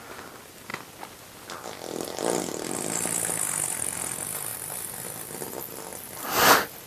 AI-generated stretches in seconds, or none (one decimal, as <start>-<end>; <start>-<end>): 4.5-5.5; 5.9-6.9